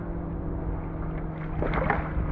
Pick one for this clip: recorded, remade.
recorded